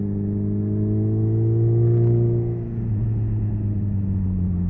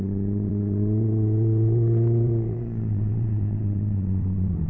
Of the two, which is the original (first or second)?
first